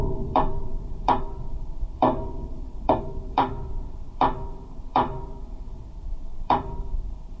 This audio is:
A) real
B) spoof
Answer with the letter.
B